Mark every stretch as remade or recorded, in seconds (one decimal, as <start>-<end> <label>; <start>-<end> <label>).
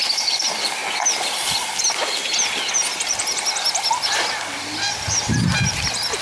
0.0-0.8 remade; 0.8-3.9 recorded; 3.9-6.2 remade